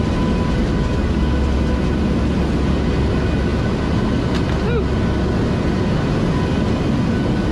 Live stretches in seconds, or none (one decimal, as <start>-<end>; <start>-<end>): 0.0-7.5